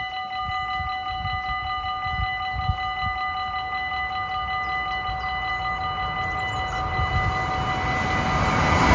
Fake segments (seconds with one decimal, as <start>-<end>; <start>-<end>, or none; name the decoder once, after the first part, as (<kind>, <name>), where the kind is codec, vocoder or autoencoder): none